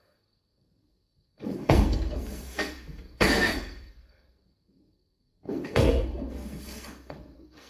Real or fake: fake